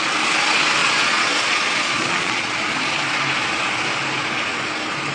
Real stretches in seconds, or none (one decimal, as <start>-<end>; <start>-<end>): 0.0-0.8; 2.5-5.1